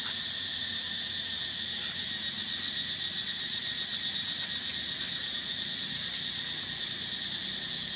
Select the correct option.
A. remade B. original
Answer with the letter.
B